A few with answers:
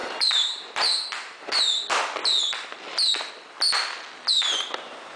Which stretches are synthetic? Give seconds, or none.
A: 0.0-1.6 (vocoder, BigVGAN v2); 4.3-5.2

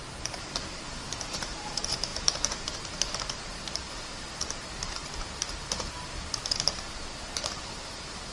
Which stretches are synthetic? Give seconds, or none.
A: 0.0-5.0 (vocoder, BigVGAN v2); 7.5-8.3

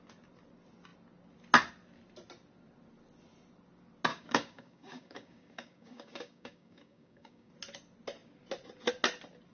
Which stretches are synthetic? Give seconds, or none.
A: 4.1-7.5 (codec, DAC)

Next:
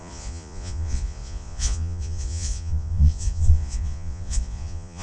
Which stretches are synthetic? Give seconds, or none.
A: 0.0-5.0 (vocoder, Vocos)

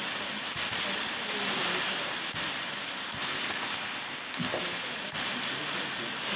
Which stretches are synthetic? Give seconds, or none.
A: 3.1-4.6 (codec, ZipCodec)